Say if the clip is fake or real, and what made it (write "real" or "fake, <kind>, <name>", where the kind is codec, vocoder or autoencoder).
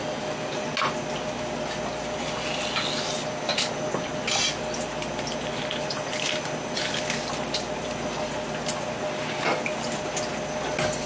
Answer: real